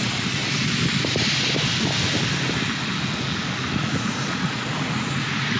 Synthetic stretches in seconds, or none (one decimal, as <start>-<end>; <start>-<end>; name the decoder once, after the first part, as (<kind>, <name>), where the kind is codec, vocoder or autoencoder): 0.0-0.4 (vocoder, Vocos); 3.7-5.6